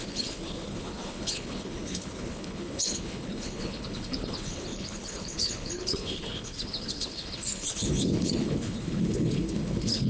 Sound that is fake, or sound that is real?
fake